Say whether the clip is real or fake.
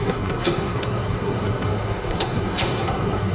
fake